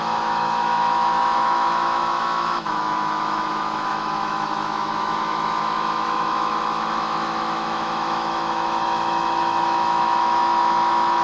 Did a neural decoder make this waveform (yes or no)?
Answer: yes